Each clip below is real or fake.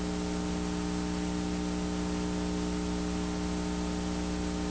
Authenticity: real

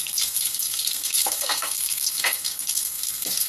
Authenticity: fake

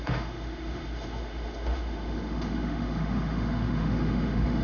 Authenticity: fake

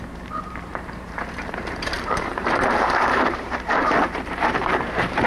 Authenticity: fake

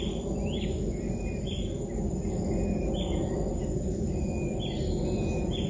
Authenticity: real